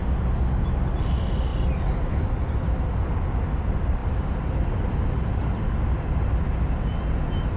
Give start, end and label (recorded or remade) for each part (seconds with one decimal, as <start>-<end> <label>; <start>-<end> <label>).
0.0-7.6 recorded